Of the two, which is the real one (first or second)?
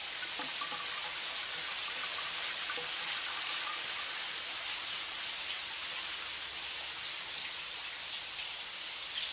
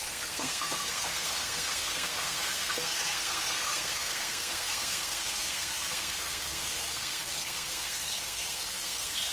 first